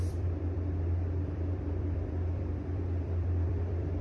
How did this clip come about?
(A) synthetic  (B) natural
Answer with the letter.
A